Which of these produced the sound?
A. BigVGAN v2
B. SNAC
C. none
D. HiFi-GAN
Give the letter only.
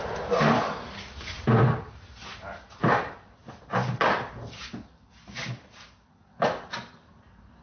C